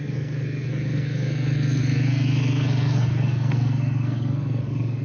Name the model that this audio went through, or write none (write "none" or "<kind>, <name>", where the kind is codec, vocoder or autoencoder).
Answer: codec, SNAC